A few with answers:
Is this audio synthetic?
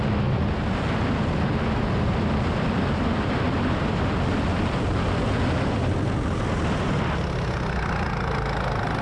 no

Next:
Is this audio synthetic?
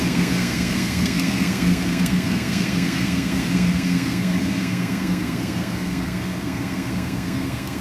yes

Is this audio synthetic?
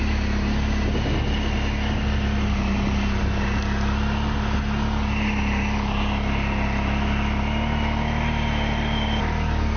no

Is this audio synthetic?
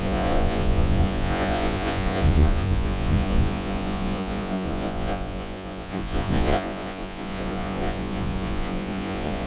yes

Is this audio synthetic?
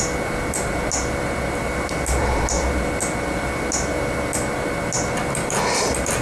no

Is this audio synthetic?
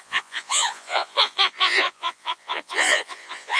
yes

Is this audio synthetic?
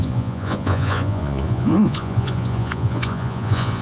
yes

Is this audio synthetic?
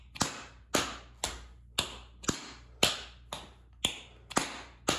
no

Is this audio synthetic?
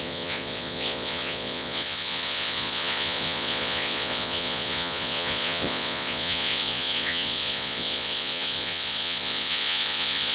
yes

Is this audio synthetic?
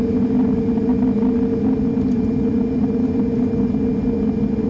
no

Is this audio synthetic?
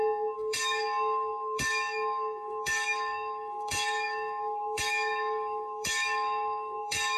yes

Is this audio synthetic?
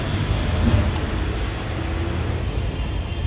no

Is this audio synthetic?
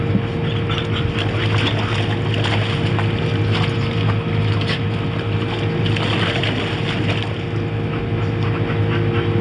no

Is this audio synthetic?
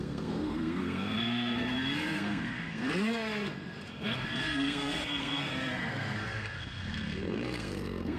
yes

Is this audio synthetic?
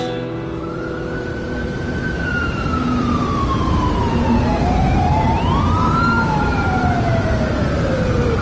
yes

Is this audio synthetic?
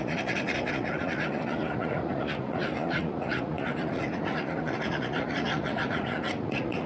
yes